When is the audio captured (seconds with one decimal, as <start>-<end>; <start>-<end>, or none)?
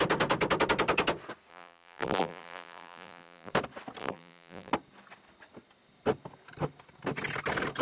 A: 0.0-1.5; 3.5-4.0; 4.7-7.8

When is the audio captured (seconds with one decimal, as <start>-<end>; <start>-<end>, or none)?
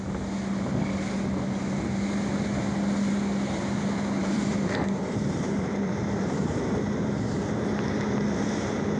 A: 0.0-4.2; 6.7-9.0